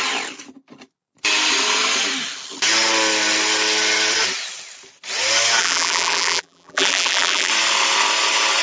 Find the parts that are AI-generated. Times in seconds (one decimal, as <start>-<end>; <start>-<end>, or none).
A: 5.6-7.5